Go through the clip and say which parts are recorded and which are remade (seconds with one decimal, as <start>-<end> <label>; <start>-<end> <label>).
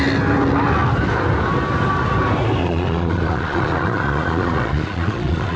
0.0-2.6 recorded; 2.6-5.6 remade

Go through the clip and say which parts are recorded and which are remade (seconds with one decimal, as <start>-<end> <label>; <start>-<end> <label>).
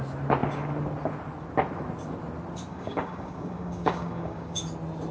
0.0-2.7 recorded; 2.7-4.6 remade; 4.6-5.1 recorded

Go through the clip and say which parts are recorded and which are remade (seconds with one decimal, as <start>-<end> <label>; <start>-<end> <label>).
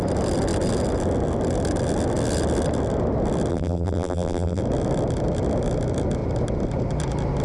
0.0-3.5 recorded; 3.5-4.6 remade; 4.6-7.4 recorded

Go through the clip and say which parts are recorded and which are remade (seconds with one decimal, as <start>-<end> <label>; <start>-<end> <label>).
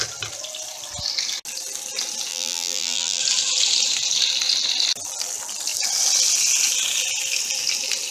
0.0-2.3 recorded; 2.3-3.2 remade; 3.2-8.1 recorded